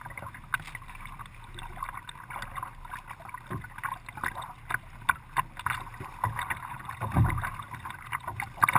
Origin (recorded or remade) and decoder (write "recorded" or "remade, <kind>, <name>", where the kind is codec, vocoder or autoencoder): recorded